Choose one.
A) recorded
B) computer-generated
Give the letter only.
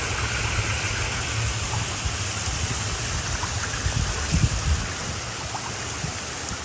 A